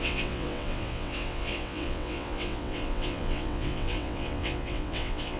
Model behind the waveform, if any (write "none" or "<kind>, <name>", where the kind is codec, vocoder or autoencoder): vocoder, WaveNeXt